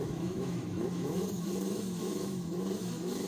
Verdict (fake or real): fake